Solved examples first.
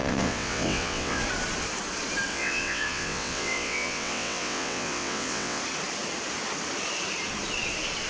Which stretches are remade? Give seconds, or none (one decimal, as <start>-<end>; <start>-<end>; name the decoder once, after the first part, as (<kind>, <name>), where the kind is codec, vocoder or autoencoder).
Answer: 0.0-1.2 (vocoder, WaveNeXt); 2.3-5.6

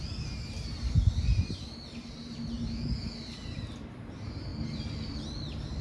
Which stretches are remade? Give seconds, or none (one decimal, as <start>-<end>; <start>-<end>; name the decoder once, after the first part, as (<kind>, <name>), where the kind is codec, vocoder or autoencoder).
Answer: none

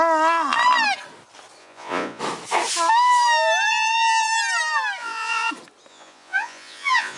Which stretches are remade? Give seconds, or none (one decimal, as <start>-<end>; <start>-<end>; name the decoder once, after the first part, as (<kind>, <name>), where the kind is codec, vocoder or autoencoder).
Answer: 1.6-2.2 (vocoder, Vocos); 5.0-5.5; 5.9-7.2